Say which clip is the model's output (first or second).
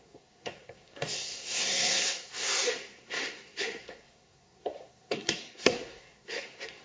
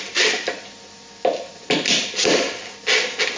first